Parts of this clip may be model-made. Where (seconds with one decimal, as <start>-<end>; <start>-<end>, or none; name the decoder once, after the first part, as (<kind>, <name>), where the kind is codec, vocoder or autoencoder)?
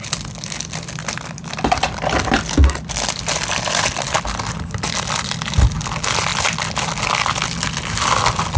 none